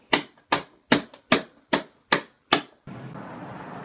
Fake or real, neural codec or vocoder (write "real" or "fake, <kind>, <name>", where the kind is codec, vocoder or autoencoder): real